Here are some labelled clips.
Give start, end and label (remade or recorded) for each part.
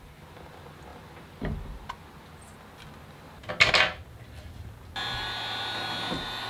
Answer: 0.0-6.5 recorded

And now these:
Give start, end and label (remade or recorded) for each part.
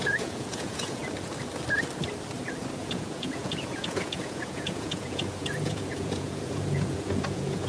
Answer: 0.0-1.0 remade; 1.0-2.8 recorded; 2.8-7.7 remade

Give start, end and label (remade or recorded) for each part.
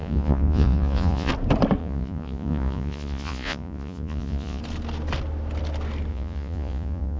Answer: 0.0-1.3 remade; 1.3-1.8 recorded; 1.8-4.6 remade; 4.6-6.1 recorded; 6.1-7.2 remade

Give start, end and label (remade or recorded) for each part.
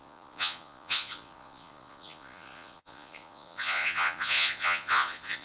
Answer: 0.0-5.4 remade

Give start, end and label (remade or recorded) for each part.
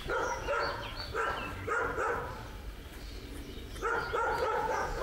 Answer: 0.0-0.9 remade; 0.9-3.9 recorded; 3.9-5.0 remade